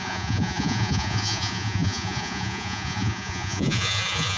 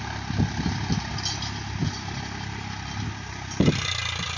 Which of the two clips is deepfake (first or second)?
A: first